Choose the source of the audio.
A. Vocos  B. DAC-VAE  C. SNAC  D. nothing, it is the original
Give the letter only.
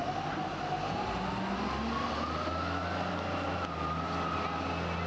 D